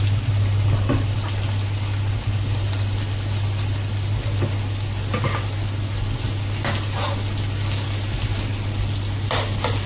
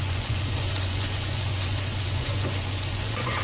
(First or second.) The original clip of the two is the first